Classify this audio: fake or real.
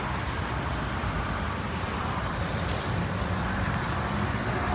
fake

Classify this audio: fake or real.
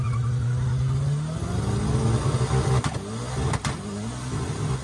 real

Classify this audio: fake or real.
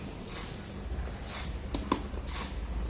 real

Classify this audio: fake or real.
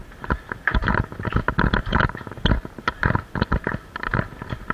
real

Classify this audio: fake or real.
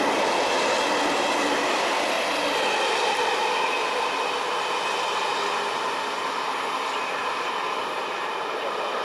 real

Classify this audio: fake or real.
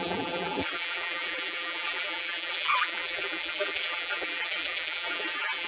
fake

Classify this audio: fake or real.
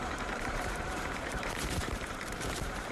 fake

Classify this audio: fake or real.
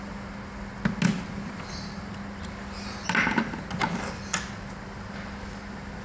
real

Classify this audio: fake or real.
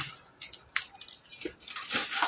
real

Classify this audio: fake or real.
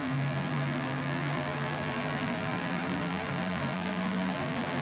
fake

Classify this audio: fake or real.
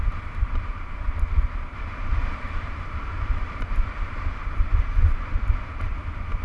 fake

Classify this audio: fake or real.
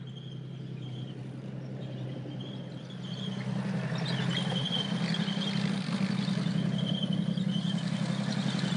real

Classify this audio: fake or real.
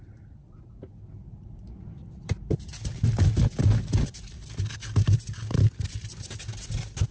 real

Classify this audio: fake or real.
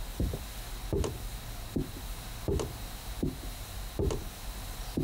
real